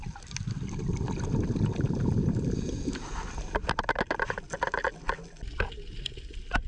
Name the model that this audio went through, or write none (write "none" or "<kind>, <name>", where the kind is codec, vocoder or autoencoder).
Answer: none